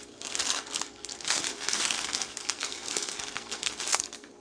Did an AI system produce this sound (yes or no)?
yes